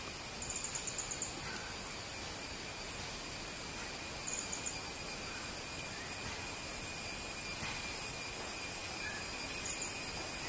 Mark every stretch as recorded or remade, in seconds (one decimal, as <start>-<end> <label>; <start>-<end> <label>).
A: 0.0-10.5 recorded